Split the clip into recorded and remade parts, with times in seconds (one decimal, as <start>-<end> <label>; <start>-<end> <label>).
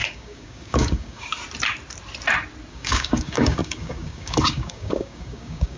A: 0.0-1.3 remade; 1.3-2.7 recorded; 2.7-5.8 remade